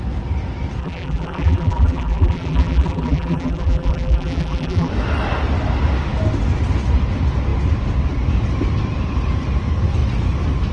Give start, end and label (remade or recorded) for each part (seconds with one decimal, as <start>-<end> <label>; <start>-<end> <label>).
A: 0.0-0.8 recorded; 0.8-4.9 remade; 4.9-10.7 recorded